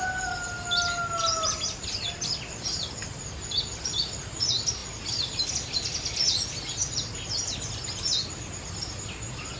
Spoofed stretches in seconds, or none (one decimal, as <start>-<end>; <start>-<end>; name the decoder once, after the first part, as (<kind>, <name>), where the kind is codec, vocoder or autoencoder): none